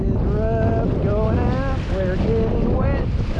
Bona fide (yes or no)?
yes